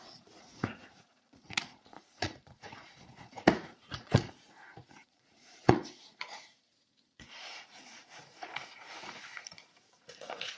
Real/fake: fake